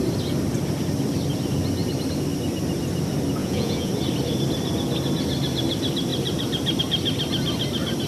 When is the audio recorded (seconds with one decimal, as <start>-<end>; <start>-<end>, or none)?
0.0-3.4; 3.9-8.1